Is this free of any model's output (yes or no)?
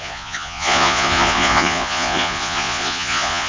no